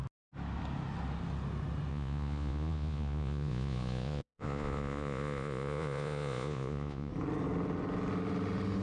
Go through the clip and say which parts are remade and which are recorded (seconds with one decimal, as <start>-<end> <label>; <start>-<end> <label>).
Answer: 0.0-1.9 recorded; 1.9-7.1 remade; 7.1-8.8 recorded